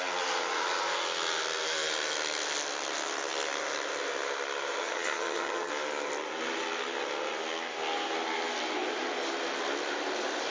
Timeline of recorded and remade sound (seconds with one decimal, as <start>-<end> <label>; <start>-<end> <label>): 0.0-4.8 recorded; 4.8-5.7 remade; 5.7-10.5 recorded